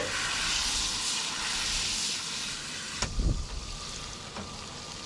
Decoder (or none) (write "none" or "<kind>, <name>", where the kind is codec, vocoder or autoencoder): none